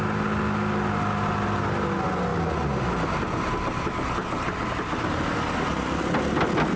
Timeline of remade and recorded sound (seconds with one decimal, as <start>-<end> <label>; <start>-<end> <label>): 0.0-6.8 recorded